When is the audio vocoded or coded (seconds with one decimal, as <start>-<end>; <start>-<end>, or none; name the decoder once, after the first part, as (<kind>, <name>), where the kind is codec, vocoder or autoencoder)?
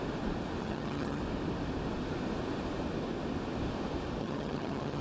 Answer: 0.6-1.2 (vocoder, HiFi-GAN); 4.2-5.0